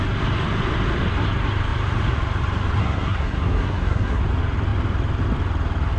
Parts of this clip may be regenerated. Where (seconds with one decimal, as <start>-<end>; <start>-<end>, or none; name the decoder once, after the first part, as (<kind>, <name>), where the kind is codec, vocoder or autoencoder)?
2.8-4.2 (codec, SNAC)